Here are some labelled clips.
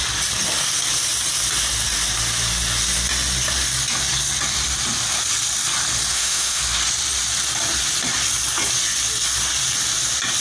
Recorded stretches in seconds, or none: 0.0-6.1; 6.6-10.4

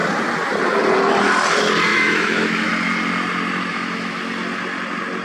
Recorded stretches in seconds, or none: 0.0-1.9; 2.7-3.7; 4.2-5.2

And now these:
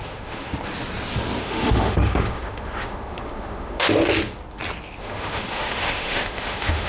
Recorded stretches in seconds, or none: 0.5-1.4; 4.0-5.0